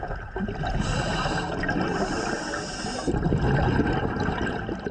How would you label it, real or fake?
real